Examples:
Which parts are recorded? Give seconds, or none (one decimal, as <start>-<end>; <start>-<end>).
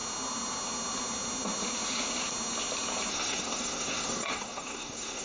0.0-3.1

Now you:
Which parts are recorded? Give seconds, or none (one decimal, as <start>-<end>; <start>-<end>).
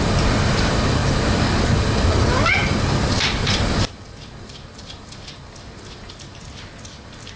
1.0-1.8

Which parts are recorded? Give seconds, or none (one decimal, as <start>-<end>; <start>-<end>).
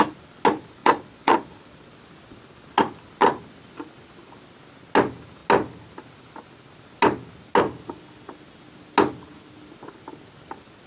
0.0-0.8; 2.0-10.9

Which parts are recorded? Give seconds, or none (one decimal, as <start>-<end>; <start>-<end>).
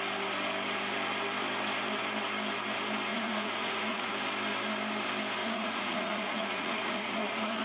0.0-3.1; 4.1-5.4